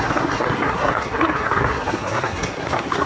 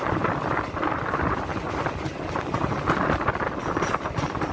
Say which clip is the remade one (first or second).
first